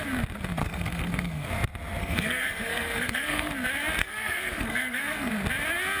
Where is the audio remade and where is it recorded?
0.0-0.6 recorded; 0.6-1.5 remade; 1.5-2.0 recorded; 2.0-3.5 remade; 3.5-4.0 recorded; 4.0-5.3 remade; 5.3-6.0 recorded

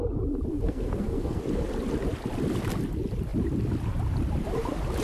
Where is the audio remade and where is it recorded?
0.0-0.5 recorded; 0.5-1.4 remade; 1.4-5.0 recorded

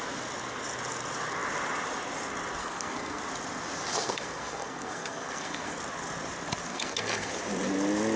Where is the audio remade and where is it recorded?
0.0-2.6 recorded; 2.6-3.2 remade; 3.2-3.9 recorded; 3.9-5.8 remade; 5.8-6.7 recorded; 6.7-7.3 remade; 7.3-8.2 recorded

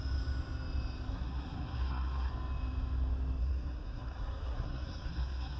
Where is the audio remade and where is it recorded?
0.0-1.1 recorded; 1.1-2.3 remade; 2.3-3.4 recorded; 3.4-5.6 remade

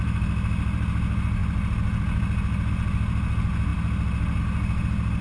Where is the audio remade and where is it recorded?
0.0-5.2 recorded

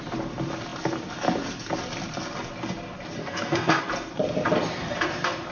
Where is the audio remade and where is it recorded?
0.0-3.2 recorded; 3.2-3.8 remade; 3.8-5.5 recorded